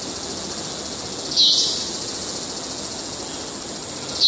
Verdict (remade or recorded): recorded